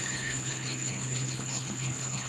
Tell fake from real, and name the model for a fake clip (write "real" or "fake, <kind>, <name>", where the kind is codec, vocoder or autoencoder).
fake, codec, HILCodec